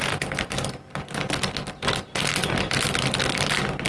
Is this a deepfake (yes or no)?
no